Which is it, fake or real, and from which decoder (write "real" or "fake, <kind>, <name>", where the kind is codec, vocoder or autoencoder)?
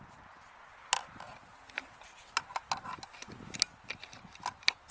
real